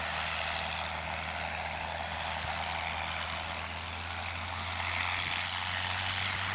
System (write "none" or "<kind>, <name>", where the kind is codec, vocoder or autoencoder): none